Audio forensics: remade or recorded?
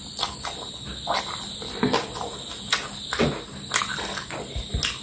recorded